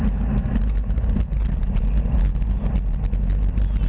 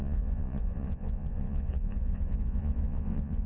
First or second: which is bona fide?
first